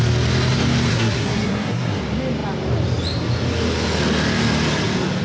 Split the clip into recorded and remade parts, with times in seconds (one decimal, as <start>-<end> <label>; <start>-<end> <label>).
0.0-0.9 recorded; 0.9-2.0 remade; 2.0-5.2 recorded